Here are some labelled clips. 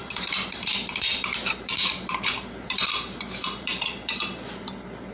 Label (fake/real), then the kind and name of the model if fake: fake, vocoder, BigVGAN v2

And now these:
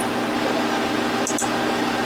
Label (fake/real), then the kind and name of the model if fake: real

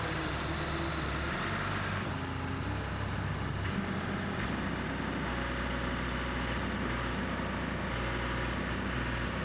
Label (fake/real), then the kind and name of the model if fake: real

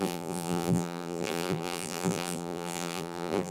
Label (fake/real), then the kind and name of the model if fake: fake, vocoder, BigVGAN v2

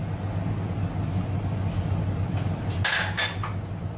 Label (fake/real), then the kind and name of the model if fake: real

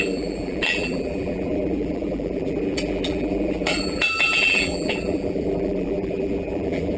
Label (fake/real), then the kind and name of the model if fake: fake, vocoder, BigVGAN v2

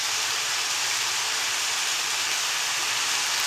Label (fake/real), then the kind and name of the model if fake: fake, vocoder, BigVGAN v2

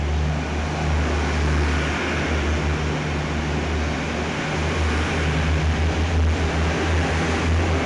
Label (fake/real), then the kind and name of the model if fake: real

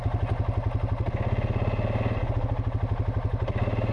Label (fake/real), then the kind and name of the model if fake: real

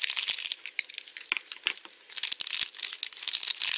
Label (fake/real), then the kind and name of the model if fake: real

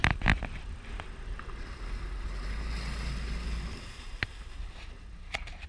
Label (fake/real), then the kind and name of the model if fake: real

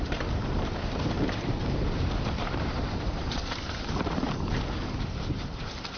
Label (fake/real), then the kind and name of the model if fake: fake, vocoder, BigVGAN v2